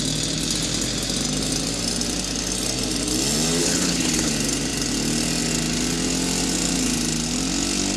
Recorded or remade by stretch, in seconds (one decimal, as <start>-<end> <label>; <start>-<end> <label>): 0.0-3.6 recorded; 3.6-4.3 remade; 4.3-8.0 recorded